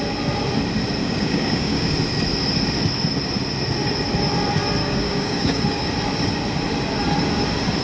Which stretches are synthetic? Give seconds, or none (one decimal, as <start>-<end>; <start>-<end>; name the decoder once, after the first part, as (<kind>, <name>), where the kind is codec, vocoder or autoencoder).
1.0-1.9 (codec, DAC); 4.8-5.9